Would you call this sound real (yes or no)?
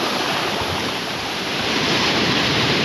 no